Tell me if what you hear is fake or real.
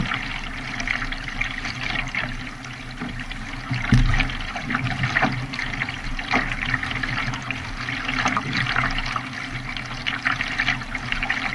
real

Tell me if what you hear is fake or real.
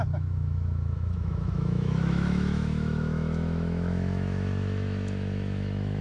fake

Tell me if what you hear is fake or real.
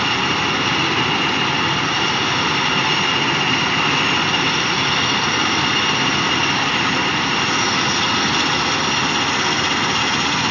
real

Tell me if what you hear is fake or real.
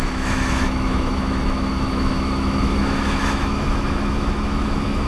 fake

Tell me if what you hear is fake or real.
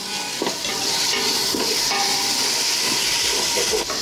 real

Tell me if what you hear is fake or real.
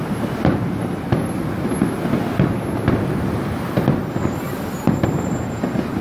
real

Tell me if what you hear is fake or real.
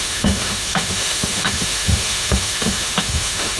fake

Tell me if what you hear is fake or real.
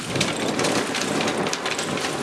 real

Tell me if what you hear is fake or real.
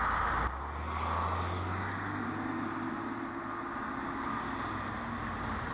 real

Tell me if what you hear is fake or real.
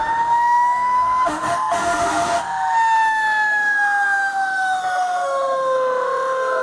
fake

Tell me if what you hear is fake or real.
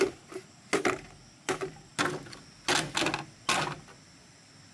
real